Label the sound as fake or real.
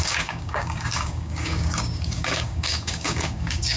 fake